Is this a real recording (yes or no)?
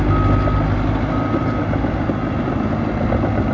yes